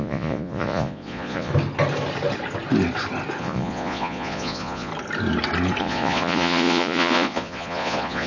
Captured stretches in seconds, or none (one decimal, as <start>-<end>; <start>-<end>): 1.5-3.4; 4.9-5.8